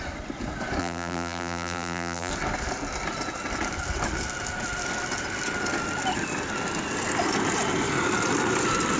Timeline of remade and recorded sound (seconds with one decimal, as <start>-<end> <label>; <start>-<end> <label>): 0.0-0.8 recorded; 0.8-2.3 remade; 2.3-9.0 recorded